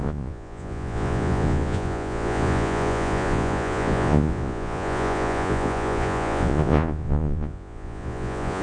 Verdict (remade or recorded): remade